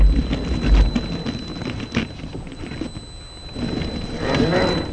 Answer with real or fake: real